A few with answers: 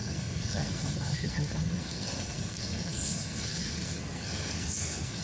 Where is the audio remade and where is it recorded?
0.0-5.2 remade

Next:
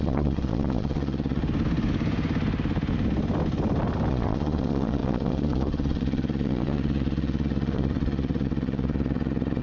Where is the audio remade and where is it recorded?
0.0-1.4 remade; 1.4-4.1 recorded; 4.1-9.6 remade

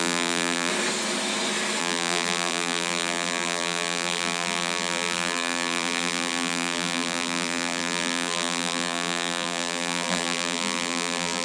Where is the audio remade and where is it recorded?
0.0-0.7 remade; 0.7-1.8 recorded; 1.8-11.4 remade

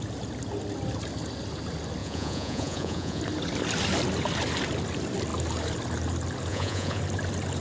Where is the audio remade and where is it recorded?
0.0-2.0 recorded; 2.0-3.2 remade; 3.2-6.5 recorded; 6.5-7.0 remade; 7.0-7.6 recorded

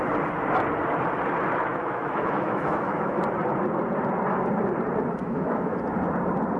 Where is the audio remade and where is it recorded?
0.0-1.7 recorded; 1.7-3.2 remade; 3.2-5.2 recorded; 5.2-5.8 remade; 5.8-6.6 recorded

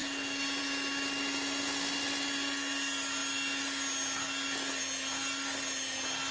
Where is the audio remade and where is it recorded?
0.0-6.3 recorded

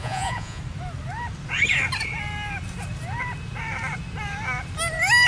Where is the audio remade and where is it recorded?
0.0-0.6 remade; 0.6-5.3 recorded